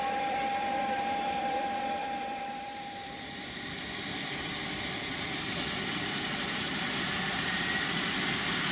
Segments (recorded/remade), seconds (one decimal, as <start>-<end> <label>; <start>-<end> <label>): 0.0-6.7 remade; 6.7-7.3 recorded; 7.3-8.7 remade